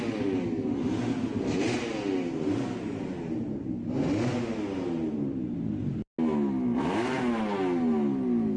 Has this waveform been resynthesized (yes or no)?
no